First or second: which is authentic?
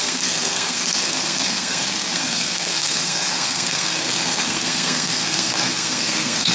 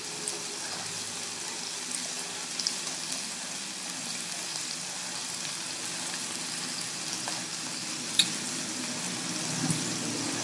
second